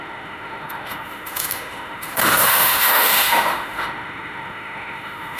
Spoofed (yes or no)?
yes